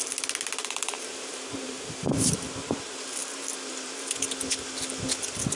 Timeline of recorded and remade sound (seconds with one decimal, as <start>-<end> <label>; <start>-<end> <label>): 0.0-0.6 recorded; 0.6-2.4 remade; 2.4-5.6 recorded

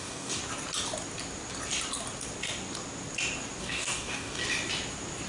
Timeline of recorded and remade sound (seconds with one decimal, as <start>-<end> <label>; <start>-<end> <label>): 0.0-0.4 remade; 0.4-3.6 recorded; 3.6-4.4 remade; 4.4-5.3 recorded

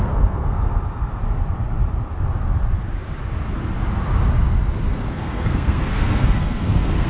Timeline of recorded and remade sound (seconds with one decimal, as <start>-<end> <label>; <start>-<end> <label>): 0.0-1.2 remade; 1.2-4.9 recorded; 4.9-7.1 remade

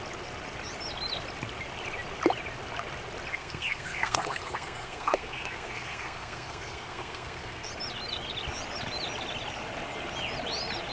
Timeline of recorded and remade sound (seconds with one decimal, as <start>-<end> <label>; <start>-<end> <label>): 0.0-3.3 recorded; 3.3-7.7 remade; 7.7-10.9 recorded